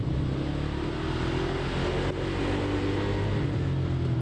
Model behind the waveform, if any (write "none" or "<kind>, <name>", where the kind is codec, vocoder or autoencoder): none